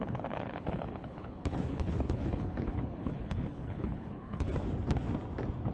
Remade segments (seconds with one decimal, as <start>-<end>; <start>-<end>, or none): 0.0-4.5